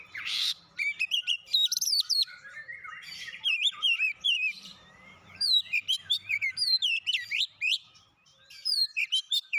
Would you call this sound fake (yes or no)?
yes